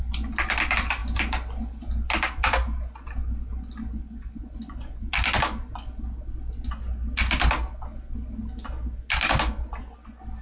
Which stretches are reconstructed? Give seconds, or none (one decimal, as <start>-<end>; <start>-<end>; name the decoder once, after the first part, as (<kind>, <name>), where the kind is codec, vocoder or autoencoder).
none